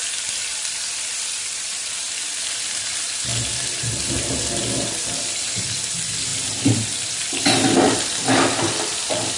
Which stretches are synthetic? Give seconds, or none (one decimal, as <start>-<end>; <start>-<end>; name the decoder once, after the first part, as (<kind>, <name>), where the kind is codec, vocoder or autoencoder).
0.5-2.5 (vocoder, BigVGAN v2)

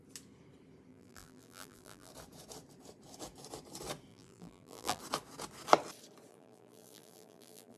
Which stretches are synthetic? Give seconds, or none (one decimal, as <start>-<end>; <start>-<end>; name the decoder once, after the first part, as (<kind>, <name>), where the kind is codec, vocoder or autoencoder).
0.9-2.1 (vocoder, BigVGAN v2); 4.1-5.0; 6.3-7.8